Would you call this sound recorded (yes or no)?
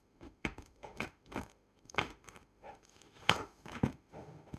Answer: no